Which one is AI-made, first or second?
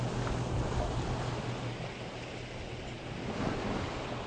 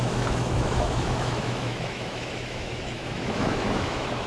second